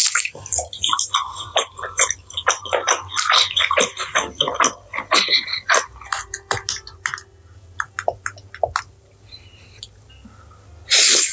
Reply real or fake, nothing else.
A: real